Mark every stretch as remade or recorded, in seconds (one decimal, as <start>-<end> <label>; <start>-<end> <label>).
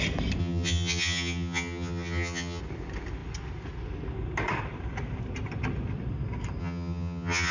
0.0-0.4 recorded; 0.4-2.6 remade; 2.6-6.6 recorded; 6.6-7.5 remade